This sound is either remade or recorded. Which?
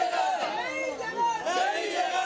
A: recorded